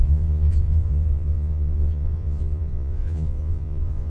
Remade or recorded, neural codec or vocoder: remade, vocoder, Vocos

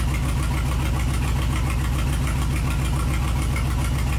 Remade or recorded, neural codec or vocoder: recorded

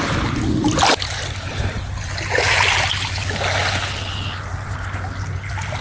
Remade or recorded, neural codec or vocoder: recorded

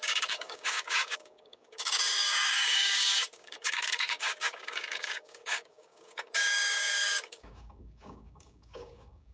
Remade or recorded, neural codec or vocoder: remade, codec, DAC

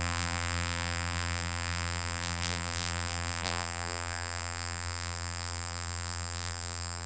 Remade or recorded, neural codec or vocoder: remade, vocoder, BigVGAN v2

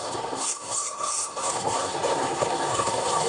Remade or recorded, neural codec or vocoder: remade, codec, SNAC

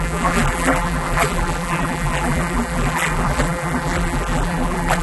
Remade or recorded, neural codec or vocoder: remade, vocoder, BigVGAN v2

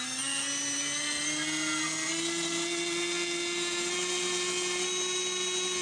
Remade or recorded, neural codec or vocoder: recorded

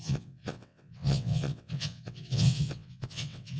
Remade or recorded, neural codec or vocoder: remade, vocoder, WaveNeXt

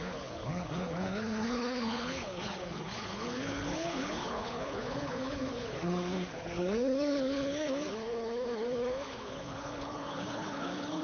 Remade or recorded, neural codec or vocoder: remade, codec, HILCodec